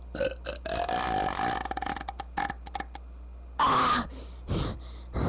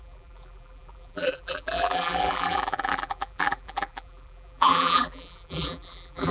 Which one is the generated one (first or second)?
second